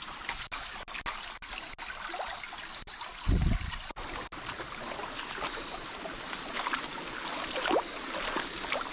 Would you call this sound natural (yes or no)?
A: yes